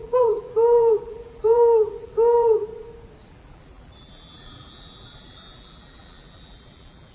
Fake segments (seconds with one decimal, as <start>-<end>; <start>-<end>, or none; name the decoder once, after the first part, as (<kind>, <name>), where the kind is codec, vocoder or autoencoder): 0.0-2.7 (vocoder, BigVGAN v2); 3.2-7.1